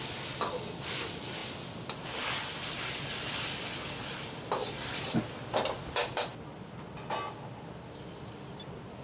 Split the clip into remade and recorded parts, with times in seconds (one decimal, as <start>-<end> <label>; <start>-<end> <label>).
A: 0.0-9.0 recorded